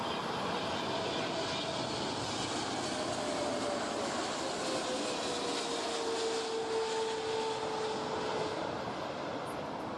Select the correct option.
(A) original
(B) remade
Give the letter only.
A